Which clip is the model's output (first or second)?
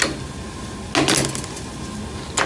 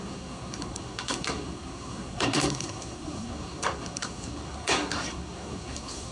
second